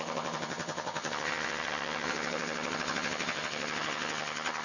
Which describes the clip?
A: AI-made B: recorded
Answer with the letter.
A